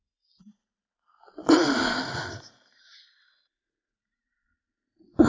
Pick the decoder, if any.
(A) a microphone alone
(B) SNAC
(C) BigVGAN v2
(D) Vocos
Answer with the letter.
A